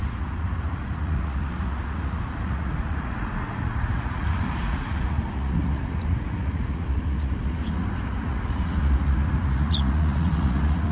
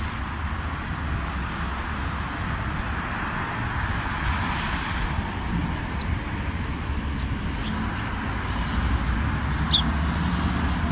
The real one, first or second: second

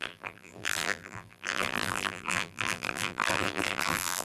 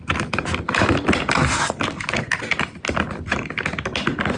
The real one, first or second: second